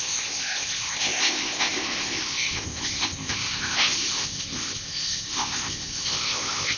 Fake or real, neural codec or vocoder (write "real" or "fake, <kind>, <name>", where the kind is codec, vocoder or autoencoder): fake, codec, ZipCodec